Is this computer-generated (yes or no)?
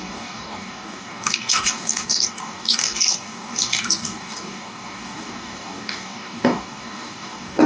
yes